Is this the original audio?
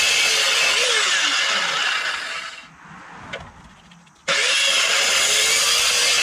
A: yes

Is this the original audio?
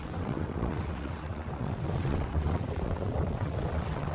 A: no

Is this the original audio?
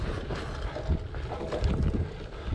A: yes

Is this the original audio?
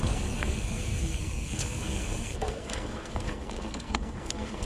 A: no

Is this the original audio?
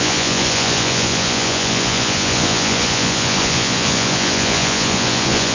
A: no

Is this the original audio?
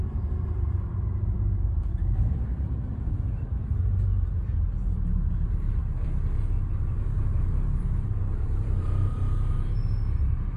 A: no